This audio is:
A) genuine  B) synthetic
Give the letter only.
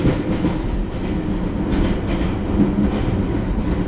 A